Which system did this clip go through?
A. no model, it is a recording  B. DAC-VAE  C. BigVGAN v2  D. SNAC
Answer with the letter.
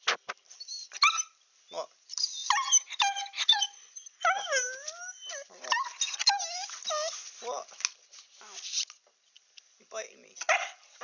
A